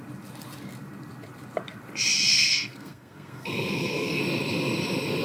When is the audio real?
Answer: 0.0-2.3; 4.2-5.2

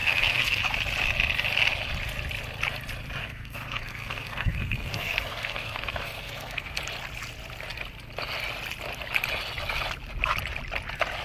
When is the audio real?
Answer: 0.6-3.2; 6.8-11.2